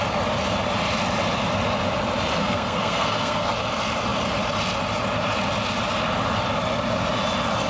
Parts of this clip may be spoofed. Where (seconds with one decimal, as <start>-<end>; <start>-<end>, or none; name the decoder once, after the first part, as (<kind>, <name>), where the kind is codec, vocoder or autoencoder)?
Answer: 2.4-3.5 (codec, SNAC)

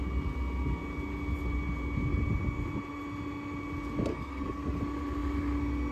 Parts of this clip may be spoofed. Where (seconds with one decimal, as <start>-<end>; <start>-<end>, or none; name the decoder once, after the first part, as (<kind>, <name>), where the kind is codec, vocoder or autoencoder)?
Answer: 4.1-4.8 (codec, SNAC)

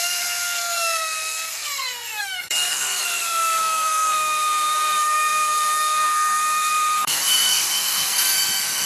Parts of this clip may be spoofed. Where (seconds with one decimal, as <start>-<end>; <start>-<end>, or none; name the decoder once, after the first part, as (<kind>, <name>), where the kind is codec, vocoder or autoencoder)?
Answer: 0.0-8.9 (codec, SNAC)

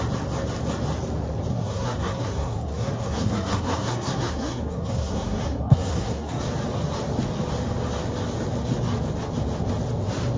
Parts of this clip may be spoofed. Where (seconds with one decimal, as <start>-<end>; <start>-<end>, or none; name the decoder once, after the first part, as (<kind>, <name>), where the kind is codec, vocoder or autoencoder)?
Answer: 1.5-6.4 (codec, SNAC)

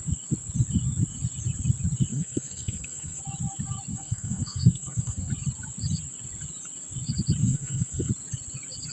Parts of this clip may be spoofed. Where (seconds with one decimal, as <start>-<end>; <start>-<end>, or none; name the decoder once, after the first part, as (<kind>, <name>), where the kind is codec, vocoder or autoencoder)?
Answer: 2.1-3.2 (codec, SNAC); 3.9-5.3; 7.4-8.1

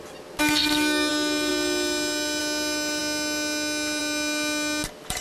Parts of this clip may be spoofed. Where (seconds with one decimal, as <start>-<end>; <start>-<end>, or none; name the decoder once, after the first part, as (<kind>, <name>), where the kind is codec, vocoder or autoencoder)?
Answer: none

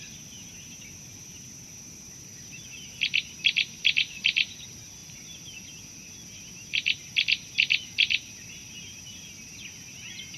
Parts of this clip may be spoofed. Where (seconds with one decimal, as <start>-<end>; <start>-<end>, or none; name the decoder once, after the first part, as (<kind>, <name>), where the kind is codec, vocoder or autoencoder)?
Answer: none